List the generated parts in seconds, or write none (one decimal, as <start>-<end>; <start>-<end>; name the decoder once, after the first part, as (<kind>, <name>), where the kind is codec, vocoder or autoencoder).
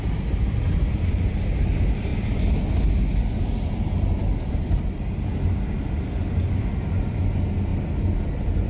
none